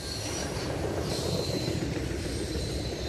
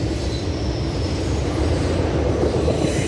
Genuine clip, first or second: second